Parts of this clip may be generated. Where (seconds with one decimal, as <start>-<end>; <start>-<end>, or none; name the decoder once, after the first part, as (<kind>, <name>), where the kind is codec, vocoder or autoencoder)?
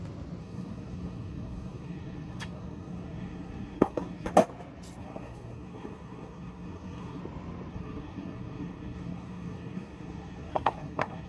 0.4-4.3 (codec, SNAC); 5.0-7.2; 7.7-11.3